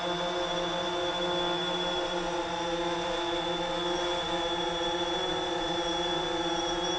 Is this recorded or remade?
remade